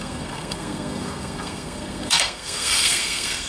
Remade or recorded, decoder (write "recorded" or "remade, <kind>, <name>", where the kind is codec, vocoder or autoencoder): remade, codec, SNAC